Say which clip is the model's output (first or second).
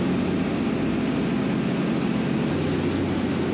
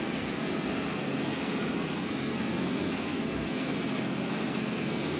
second